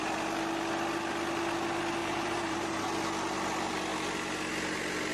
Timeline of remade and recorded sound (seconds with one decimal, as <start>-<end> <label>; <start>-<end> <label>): 0.0-2.0 recorded; 2.0-2.8 remade; 2.8-5.1 recorded